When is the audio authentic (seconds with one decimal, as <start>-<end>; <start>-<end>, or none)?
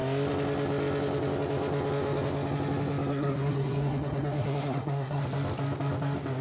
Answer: 0.0-3.1; 5.2-6.4